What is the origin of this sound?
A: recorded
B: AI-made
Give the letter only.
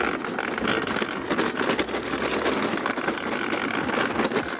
A